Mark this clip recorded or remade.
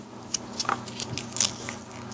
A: recorded